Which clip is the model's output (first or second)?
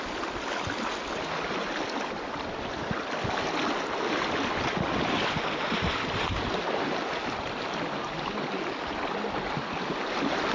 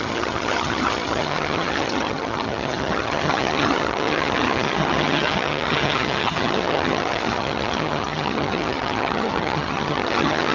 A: second